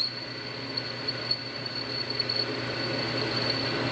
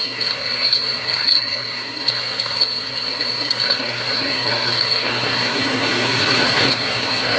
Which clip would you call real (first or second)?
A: first